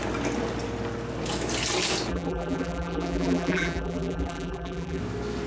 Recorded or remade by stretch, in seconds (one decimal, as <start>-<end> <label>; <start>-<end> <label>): 0.0-2.1 recorded; 2.1-5.0 remade; 5.0-5.5 recorded